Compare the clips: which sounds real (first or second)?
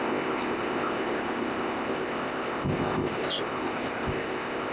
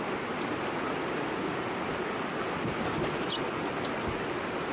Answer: second